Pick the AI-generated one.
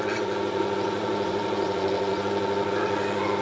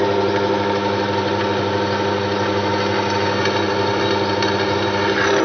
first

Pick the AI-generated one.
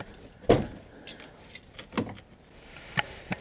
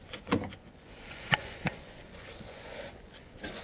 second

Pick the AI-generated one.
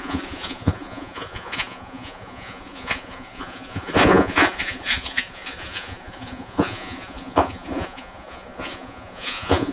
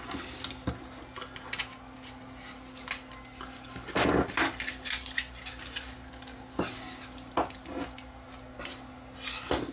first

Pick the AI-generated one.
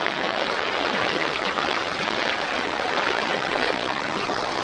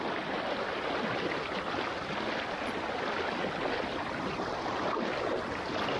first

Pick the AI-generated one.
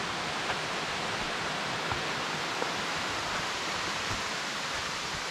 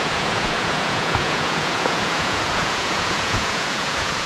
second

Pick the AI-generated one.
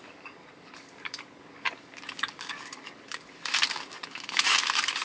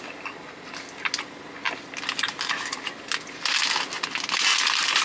first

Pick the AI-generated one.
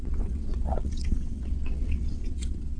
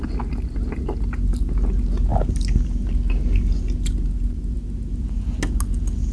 first